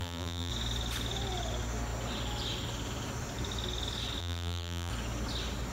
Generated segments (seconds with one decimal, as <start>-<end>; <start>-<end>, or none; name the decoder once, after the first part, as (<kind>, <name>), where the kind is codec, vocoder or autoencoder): 0.0-0.5 (vocoder, BigVGAN v2); 4.2-4.9